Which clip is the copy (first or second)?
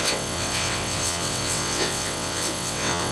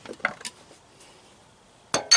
first